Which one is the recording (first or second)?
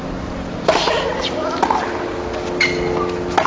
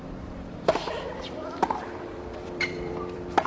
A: first